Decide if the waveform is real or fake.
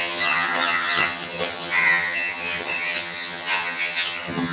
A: fake